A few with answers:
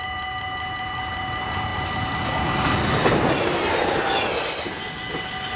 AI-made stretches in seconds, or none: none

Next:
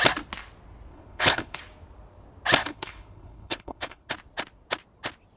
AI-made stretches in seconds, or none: 0.9-1.6 (codec, HILCodec); 2.6-4.1